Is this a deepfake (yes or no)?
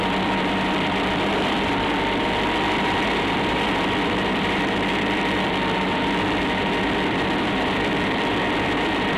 yes